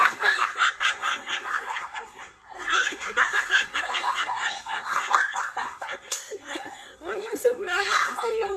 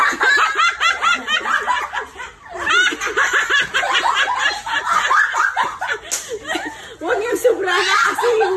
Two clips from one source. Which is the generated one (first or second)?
first